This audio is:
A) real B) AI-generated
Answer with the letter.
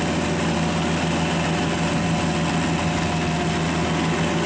A